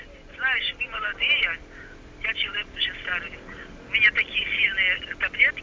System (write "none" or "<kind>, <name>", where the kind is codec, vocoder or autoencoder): none